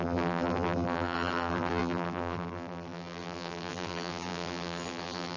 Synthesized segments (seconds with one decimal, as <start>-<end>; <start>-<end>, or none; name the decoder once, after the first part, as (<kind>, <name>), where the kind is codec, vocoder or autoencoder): 0.0-5.4 (vocoder, BigVGAN v2)